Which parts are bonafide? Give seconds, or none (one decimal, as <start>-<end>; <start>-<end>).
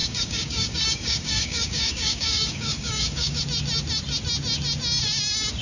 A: 3.4-5.6